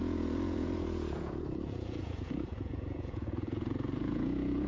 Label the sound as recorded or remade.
remade